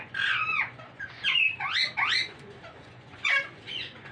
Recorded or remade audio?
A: remade